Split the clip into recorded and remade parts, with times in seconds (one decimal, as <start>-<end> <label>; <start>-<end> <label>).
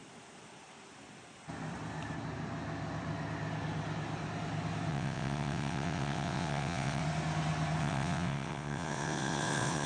0.0-4.9 recorded; 4.9-7.0 remade; 7.0-7.8 recorded; 7.8-9.9 remade